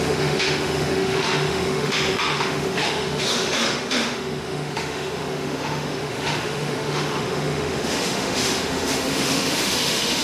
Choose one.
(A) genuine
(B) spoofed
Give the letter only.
B